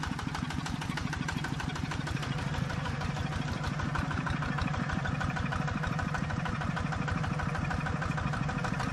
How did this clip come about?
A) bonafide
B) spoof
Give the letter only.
B